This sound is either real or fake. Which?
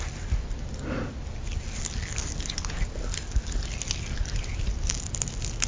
real